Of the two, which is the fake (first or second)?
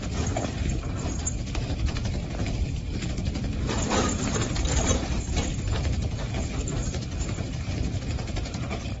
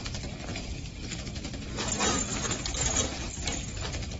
first